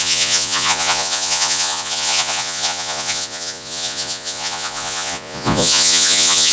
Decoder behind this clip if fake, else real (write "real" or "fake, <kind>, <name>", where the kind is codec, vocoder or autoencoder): fake, vocoder, Vocos